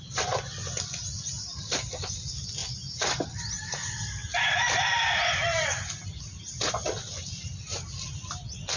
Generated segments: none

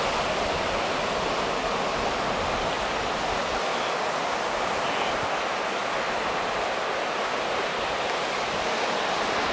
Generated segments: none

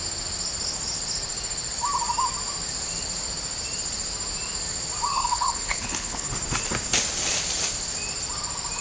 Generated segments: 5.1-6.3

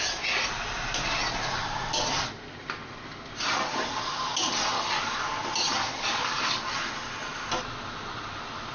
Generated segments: none